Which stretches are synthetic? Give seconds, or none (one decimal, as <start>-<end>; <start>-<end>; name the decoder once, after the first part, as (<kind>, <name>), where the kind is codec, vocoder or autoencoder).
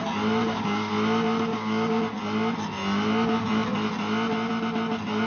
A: 0.4-0.9 (codec, DAC); 1.5-2.0